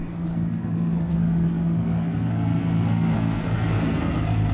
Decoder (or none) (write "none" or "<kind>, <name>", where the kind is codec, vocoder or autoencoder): codec, SNAC